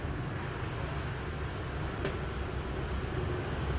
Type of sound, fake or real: real